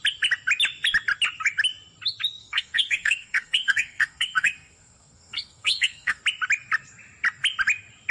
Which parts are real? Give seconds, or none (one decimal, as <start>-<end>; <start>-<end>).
0.0-2.4; 6.2-8.1